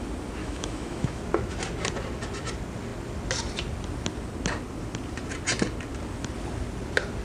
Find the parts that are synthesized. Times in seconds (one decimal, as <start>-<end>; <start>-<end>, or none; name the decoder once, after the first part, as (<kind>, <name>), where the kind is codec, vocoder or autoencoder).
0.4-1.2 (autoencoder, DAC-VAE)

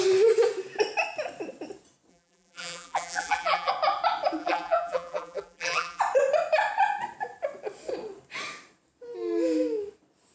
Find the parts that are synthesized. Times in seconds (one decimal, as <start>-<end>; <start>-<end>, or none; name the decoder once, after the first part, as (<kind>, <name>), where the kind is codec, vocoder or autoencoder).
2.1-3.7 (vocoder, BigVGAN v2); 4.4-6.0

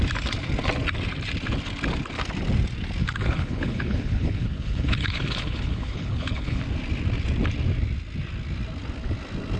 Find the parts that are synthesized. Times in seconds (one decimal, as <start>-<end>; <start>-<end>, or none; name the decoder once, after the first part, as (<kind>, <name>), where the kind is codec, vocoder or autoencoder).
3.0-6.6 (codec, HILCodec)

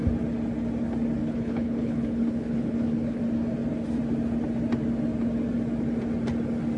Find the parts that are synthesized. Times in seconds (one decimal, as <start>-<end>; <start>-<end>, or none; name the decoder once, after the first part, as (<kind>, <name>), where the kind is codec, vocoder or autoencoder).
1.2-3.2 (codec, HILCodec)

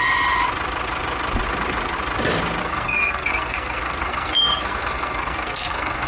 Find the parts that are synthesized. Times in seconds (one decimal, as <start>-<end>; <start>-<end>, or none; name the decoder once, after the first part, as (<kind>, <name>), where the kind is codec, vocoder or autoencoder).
2.6-6.1 (codec, SNAC)